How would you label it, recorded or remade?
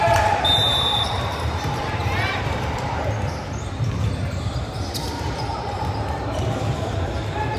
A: remade